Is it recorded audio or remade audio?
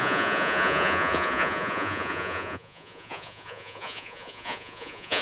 remade